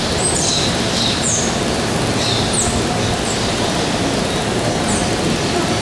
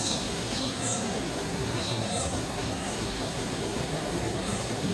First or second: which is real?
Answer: first